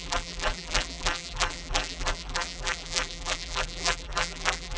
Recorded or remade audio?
remade